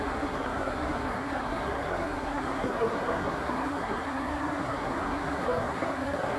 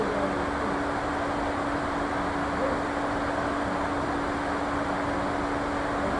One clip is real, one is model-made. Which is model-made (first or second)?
first